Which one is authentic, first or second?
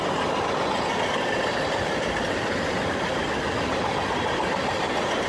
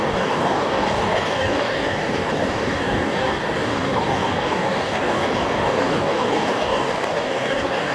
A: first